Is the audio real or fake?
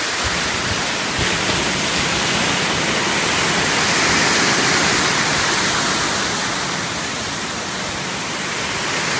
real